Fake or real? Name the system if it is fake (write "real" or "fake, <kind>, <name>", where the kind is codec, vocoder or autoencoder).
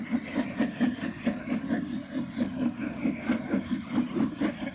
real